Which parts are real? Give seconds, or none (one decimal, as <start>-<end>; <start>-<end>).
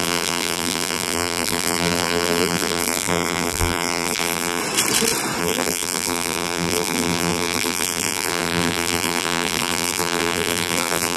4.6-5.4